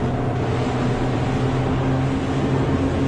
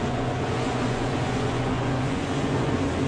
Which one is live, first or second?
first